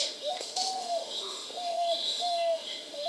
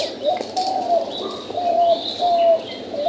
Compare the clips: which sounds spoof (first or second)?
first